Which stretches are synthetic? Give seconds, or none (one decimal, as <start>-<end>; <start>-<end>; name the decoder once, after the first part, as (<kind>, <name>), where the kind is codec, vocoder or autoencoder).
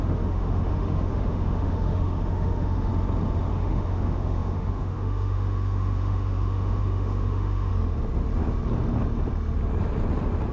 0.0-2.9 (autoencoder, DAC-VAE); 3.5-7.7